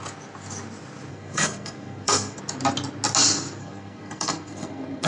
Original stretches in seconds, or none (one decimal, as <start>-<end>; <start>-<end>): 0.0-1.1; 2.4-3.6